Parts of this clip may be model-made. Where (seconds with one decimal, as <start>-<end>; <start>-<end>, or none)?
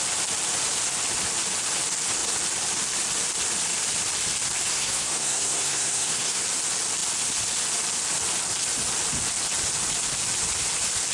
4.7-6.4